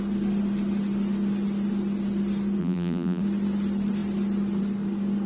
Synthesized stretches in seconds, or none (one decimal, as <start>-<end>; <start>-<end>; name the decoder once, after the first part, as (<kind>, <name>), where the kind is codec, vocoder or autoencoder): 2.6-3.2 (vocoder, BigVGAN v2)